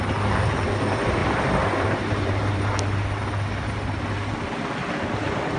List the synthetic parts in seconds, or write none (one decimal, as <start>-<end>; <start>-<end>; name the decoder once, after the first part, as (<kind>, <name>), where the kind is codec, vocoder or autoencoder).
1.2-2.7 (vocoder, BigVGAN v2); 4.8-5.6

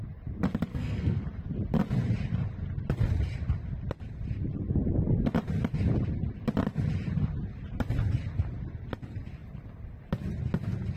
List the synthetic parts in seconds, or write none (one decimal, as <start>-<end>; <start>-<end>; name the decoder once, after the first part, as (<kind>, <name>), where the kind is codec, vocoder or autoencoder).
0.7-1.2 (codec, SNAC)

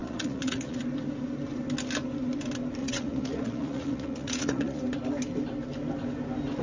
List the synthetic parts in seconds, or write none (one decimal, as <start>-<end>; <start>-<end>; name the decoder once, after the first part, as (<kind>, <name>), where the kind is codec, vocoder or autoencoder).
0.0-0.8 (vocoder, Vocos); 2.8-4.8

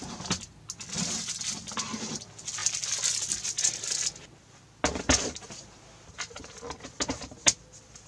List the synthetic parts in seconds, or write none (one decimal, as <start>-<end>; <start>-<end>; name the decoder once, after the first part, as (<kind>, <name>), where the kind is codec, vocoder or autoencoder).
none

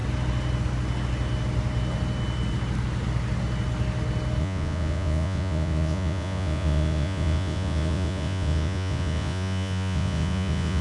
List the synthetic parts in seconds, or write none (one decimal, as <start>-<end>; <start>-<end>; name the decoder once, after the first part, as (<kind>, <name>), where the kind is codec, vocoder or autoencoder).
4.4-10.8 (vocoder, Vocos)

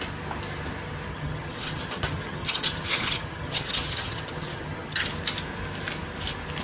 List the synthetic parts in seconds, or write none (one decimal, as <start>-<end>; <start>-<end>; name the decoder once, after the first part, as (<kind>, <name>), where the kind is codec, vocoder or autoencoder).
1.1-5.1 (vocoder, HiFi-GAN)